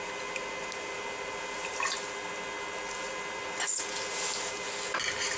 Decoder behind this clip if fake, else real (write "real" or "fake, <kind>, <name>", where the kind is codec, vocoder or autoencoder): real